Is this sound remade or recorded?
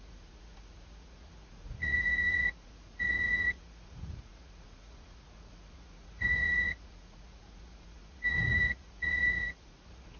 remade